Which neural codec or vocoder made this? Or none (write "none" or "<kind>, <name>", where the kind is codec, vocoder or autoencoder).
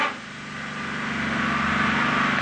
none